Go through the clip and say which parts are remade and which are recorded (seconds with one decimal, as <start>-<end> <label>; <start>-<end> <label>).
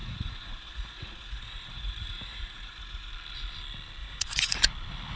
0.0-3.1 remade; 3.1-4.0 recorded; 4.0-4.6 remade; 4.6-5.2 recorded